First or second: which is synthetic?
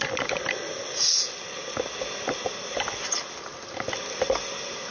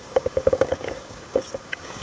second